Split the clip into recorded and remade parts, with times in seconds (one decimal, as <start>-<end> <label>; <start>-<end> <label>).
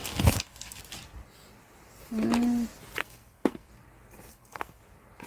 0.0-0.8 remade; 0.8-3.0 recorded; 3.0-3.7 remade; 3.7-4.3 recorded; 4.3-4.8 remade; 4.8-5.3 recorded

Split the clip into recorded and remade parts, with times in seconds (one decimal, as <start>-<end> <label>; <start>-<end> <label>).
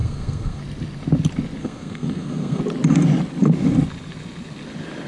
0.0-0.6 remade; 0.6-1.6 recorded; 1.6-2.6 remade; 2.6-5.1 recorded